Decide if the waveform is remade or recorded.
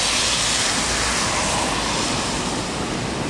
recorded